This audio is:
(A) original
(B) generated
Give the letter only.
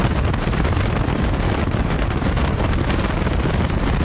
A